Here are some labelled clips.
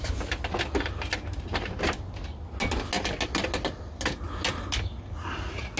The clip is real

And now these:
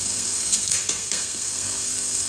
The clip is fake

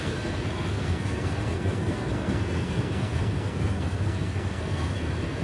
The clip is fake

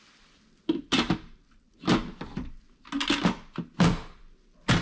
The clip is real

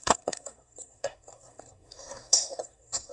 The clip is fake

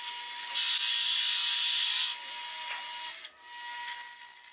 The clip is real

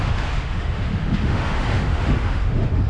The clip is fake